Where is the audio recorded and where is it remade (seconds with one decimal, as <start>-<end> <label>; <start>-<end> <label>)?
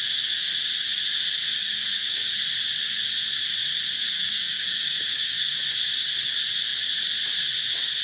0.0-1.6 recorded; 1.6-2.3 remade; 2.3-4.0 recorded; 4.0-5.5 remade; 5.5-8.0 recorded